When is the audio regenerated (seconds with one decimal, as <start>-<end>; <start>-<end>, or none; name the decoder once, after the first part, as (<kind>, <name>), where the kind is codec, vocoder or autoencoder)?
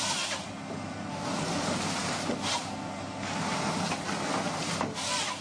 none